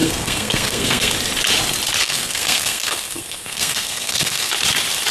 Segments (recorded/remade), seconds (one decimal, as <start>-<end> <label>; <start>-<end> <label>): 0.0-1.1 remade; 1.1-2.0 recorded; 2.0-4.5 remade; 4.5-5.1 recorded